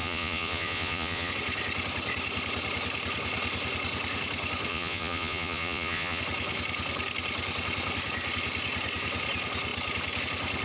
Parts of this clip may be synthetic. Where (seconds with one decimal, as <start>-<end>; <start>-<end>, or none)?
0.0-1.3; 4.7-6.2